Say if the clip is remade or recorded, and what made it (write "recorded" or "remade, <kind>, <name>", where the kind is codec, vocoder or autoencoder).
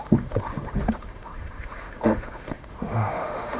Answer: remade, autoencoder, DAC-VAE